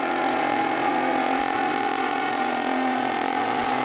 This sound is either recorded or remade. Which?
remade